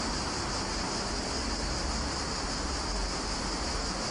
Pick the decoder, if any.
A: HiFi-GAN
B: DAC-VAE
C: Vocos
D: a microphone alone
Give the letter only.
D